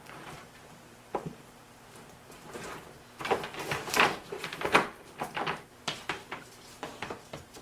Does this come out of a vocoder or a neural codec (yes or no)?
yes